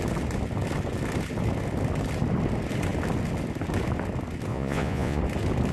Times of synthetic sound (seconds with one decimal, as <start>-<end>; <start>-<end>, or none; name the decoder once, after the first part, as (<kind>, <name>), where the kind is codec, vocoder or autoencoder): 4.5-5.2 (vocoder, Vocos)